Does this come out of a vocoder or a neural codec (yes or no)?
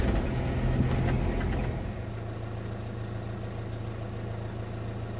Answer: no